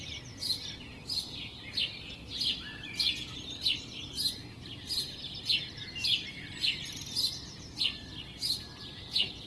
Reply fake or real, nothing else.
real